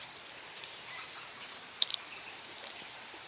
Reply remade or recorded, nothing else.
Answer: remade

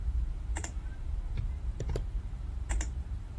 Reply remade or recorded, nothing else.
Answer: remade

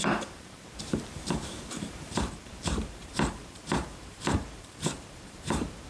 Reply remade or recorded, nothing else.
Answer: remade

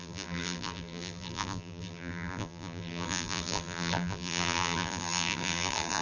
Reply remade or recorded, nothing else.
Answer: remade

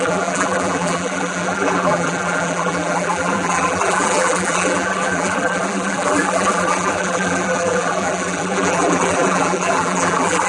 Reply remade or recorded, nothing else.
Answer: remade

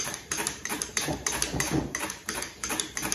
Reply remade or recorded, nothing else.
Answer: remade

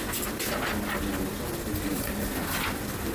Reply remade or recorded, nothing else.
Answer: recorded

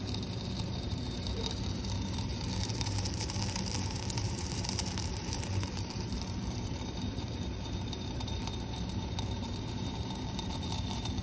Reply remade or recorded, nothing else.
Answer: remade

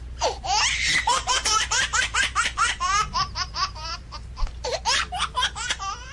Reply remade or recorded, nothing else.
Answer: remade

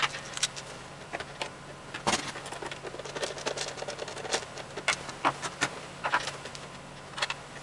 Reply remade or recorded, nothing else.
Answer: recorded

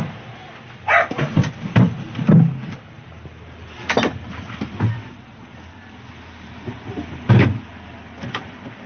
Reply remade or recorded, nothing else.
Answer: recorded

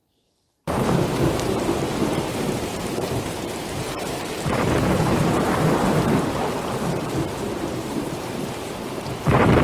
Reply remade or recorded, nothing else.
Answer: remade